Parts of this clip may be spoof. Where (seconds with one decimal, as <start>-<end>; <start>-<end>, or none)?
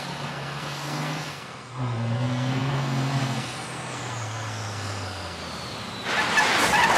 0.0-5.4